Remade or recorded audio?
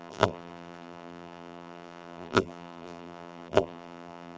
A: remade